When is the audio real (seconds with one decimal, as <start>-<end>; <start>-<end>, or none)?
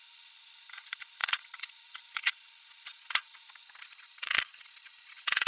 none